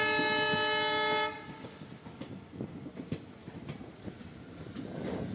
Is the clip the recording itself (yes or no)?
yes